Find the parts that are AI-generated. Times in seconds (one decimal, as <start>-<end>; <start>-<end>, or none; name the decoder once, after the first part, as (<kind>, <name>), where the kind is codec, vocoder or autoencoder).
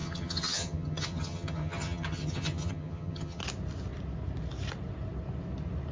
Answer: 0.0-3.4 (vocoder, HiFi-GAN)